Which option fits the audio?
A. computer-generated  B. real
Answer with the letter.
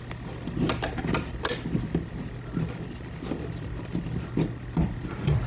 B